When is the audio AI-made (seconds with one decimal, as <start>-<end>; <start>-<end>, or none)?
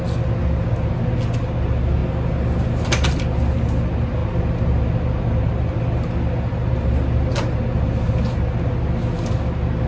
none